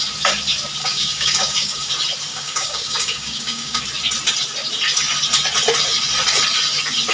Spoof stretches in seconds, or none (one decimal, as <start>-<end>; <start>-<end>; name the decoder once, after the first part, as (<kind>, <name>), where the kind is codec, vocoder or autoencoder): 0.8-1.9 (codec, DAC); 2.3-3.8